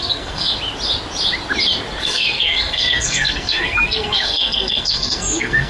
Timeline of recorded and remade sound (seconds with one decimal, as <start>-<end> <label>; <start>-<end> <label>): 0.0-0.5 remade; 0.5-2.0 recorded; 2.0-5.7 remade